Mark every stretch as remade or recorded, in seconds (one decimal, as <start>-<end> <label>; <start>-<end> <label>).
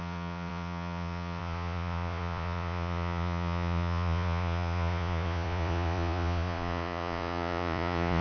0.0-8.2 remade